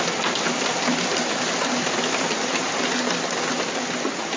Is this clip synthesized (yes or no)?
no